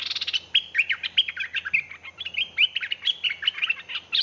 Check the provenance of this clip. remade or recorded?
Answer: recorded